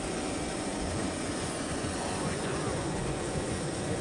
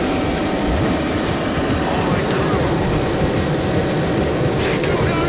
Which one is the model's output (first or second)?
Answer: first